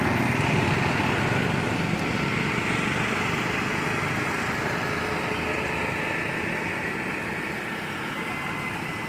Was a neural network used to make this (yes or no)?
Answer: no